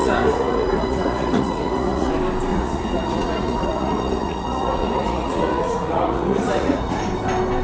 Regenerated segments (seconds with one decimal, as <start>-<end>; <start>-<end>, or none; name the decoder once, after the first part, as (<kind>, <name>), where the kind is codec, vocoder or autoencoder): 0.0-2.1 (vocoder, Vocos); 2.5-7.0

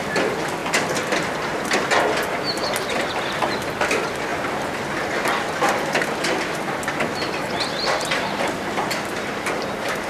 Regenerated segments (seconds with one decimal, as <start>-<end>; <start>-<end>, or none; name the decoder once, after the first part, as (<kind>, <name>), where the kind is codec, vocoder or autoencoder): none

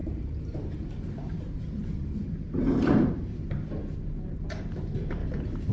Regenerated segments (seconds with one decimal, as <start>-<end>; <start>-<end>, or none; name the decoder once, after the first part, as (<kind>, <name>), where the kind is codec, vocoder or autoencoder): 0.0-5.2 (vocoder, BigVGAN v2)